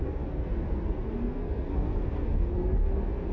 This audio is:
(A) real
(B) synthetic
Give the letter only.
B